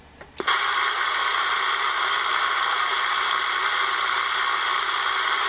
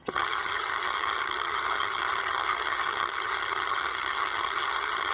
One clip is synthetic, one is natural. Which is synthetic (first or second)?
second